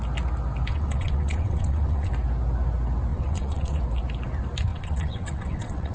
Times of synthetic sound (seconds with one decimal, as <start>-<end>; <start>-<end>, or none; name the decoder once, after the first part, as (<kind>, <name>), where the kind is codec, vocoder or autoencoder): 0.7-2.1 (vocoder, WaveNeXt); 3.1-3.8; 4.7-5.9